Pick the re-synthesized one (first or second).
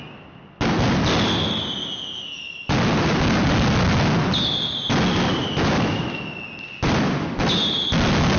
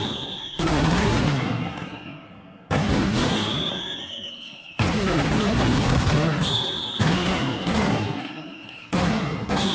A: second